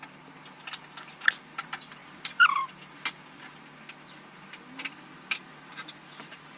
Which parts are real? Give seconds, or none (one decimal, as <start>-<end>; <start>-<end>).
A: 0.0-2.0; 2.7-6.6